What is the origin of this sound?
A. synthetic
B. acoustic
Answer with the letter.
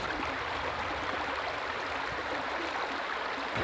B